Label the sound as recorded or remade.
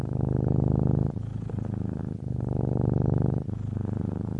recorded